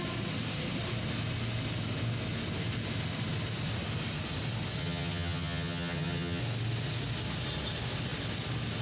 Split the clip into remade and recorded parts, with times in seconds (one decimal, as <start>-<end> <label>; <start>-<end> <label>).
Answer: 0.0-4.8 recorded; 4.8-6.4 remade; 6.4-8.8 recorded

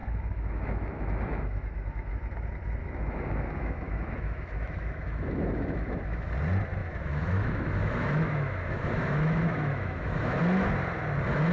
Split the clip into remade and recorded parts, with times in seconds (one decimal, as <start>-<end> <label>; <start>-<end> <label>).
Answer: 0.0-2.1 remade; 2.1-2.8 recorded; 2.8-6.3 remade; 6.3-6.8 recorded; 6.8-10.4 remade; 10.4-11.5 recorded